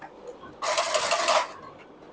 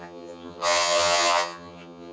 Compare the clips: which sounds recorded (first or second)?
first